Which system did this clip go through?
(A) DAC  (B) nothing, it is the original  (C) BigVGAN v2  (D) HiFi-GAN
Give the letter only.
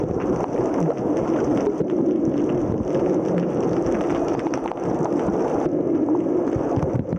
B